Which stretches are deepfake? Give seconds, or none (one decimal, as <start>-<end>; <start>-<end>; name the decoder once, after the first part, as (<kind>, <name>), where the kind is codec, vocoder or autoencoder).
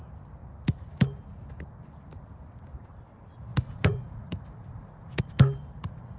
3.5-5.2 (vocoder, Vocos)